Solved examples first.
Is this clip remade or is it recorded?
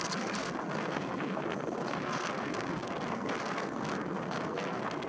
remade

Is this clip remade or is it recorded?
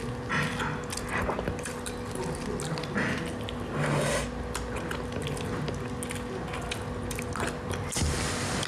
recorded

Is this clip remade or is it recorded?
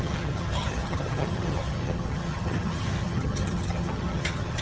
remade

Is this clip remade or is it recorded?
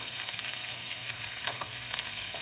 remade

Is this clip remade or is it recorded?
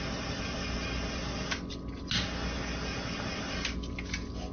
recorded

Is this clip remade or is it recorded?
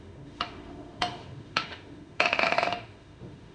remade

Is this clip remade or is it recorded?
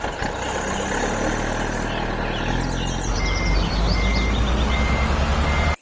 recorded